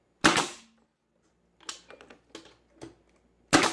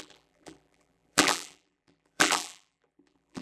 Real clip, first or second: first